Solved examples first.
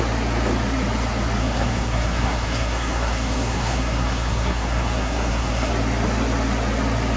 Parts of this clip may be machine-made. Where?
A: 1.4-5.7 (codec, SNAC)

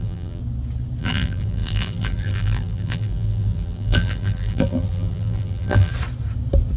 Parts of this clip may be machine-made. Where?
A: 0.0-0.4 (vocoder, BigVGAN v2); 1.0-5.9

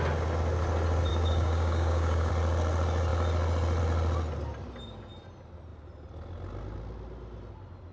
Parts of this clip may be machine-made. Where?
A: 1.1-2.3 (codec, DAC)

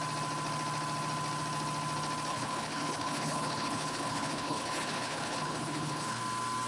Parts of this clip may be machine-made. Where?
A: 2.3-6.2 (codec, HILCodec)

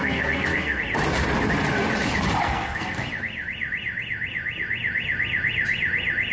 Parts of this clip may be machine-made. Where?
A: 0.0-0.8 (codec, SNAC); 2.4-3.0

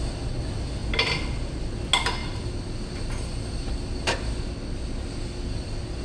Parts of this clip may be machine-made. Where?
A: none

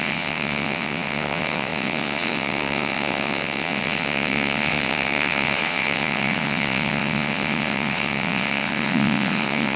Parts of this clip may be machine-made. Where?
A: 0.0-9.8 (vocoder, WaveNeXt)

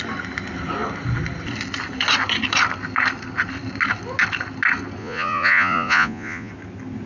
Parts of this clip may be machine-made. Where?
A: 5.0-6.5 (vocoder, Vocos)